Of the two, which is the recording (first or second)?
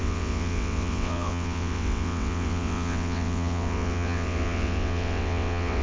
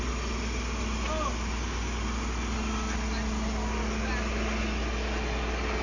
second